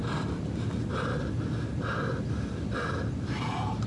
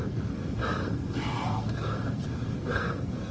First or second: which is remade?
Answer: second